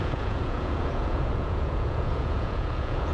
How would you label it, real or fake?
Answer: fake